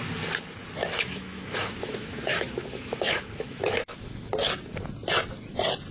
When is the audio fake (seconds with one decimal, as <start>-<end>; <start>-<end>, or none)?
0.8-4.3